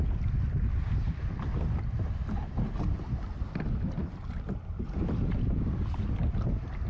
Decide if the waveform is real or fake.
real